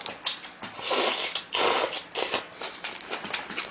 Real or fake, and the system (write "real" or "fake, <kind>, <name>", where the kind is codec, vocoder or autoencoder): real